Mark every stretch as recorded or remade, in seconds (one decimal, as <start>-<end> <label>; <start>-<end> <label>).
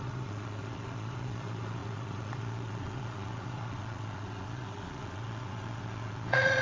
0.0-6.6 remade